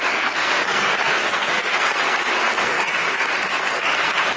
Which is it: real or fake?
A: fake